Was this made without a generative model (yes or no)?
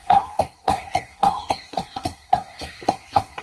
no